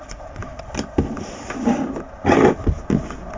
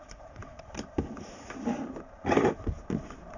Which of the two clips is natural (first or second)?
first